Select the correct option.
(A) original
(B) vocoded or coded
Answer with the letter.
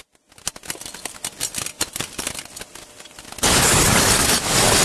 A